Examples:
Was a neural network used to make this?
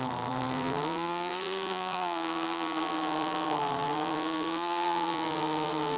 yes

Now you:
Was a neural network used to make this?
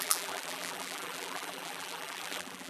yes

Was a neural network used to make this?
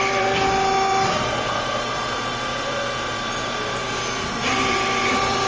yes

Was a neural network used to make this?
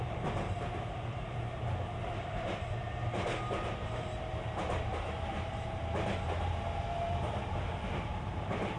yes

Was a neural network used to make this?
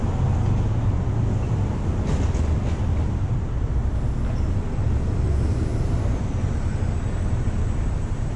no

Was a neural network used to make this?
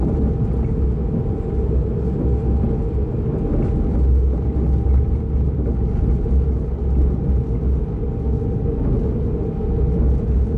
no